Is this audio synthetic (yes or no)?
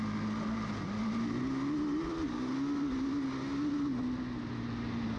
no